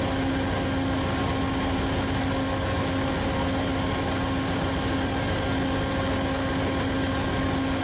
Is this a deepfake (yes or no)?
no